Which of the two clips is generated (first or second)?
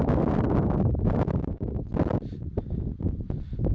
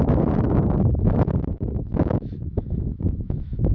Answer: second